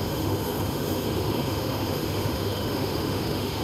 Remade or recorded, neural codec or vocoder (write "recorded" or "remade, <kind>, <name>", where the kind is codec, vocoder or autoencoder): remade, autoencoder, DAC-VAE